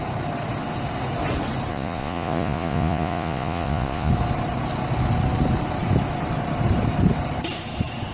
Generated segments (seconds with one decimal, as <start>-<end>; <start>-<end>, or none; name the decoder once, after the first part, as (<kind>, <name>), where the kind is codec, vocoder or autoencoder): 1.7-4.1 (vocoder, Vocos)